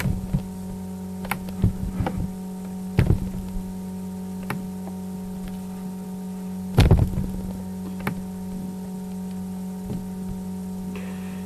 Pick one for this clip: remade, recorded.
recorded